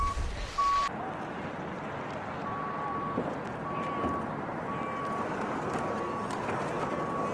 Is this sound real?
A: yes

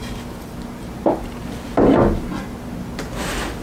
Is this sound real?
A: yes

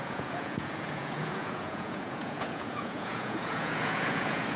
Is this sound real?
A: no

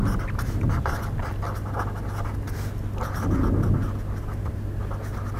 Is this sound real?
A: yes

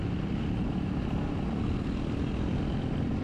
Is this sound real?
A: no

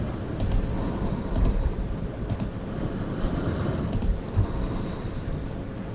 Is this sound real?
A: yes